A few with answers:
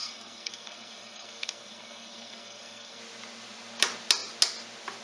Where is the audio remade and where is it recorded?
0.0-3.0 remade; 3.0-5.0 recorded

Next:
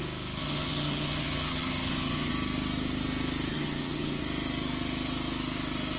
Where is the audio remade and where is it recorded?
0.0-0.4 recorded; 0.4-2.3 remade; 2.3-3.5 recorded; 3.5-4.2 remade; 4.2-6.0 recorded